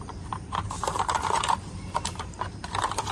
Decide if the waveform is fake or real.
fake